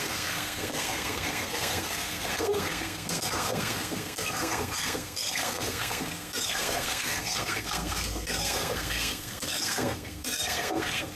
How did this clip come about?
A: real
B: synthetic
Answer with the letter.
B